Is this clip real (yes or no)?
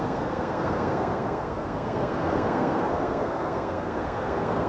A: no